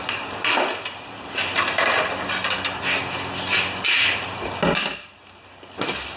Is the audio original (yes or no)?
yes